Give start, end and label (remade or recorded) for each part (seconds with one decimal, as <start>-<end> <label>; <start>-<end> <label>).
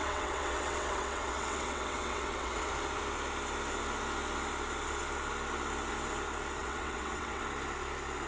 0.0-2.7 remade; 2.7-6.6 recorded; 6.6-7.4 remade; 7.4-8.3 recorded